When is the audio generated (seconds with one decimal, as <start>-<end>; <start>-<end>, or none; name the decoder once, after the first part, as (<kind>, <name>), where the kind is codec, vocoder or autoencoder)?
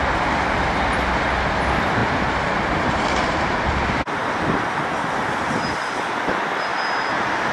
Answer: none